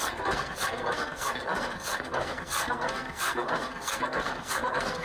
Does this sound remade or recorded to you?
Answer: remade